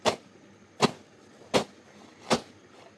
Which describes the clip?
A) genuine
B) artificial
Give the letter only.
A